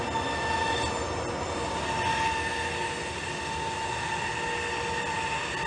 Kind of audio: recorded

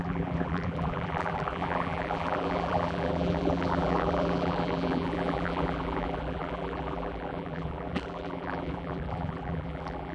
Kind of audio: remade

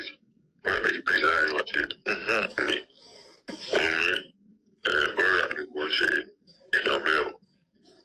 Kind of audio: remade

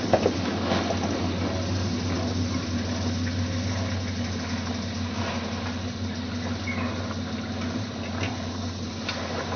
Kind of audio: recorded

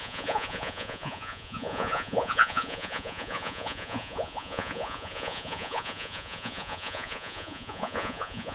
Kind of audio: remade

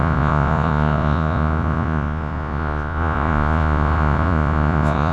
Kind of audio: remade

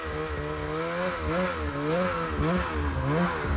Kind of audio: recorded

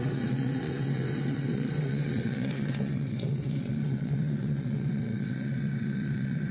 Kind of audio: remade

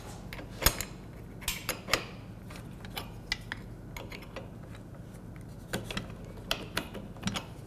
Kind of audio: recorded